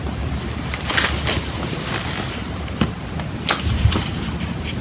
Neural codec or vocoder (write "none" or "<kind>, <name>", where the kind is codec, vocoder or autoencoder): none